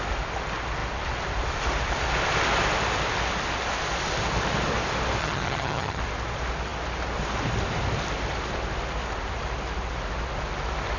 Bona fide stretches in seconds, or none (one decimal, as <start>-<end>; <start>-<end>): 0.0-5.2; 6.0-11.0